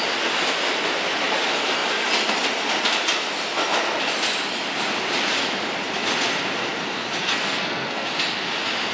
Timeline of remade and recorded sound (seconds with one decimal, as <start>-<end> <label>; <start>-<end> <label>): 0.0-7.2 recorded; 7.2-8.1 remade; 8.1-8.9 recorded